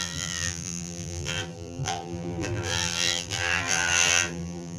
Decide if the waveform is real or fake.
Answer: fake